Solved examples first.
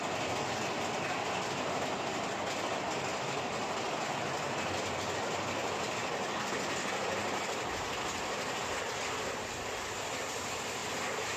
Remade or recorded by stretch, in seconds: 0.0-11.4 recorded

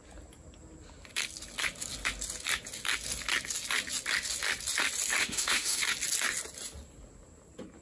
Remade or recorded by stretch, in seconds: 0.0-5.2 recorded; 5.2-5.8 remade; 5.8-7.8 recorded

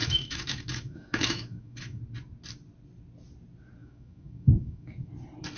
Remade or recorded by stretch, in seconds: 0.0-2.0 remade; 2.0-3.8 recorded; 3.8-5.1 remade; 5.1-5.6 recorded

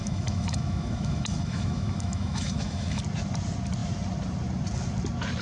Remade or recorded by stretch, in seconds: 0.0-3.0 remade; 3.0-5.4 recorded

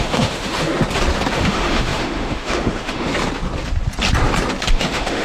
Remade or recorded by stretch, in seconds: 0.0-0.7 remade; 0.7-1.3 recorded; 1.3-3.1 remade; 3.1-4.7 recorded; 4.7-5.2 remade

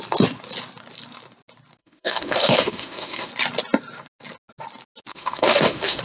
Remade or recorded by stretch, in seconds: 0.0-1.8 recorded; 1.8-3.3 remade; 3.3-5.1 recorded; 5.1-6.0 remade